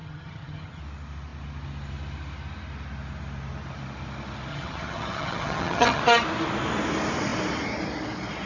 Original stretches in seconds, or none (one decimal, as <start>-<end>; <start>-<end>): 0.8-4.5; 6.0-8.5